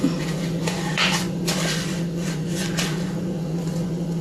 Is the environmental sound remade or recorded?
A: remade